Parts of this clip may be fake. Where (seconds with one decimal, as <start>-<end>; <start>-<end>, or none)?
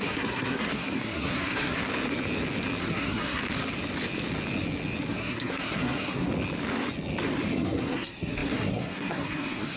0.0-1.8; 2.8-3.4; 5.1-6.3; 7.5-9.8